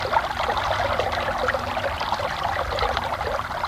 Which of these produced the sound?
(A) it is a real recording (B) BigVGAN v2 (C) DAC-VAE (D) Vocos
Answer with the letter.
A